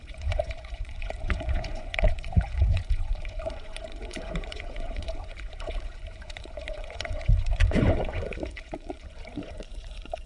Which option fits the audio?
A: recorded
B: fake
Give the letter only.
B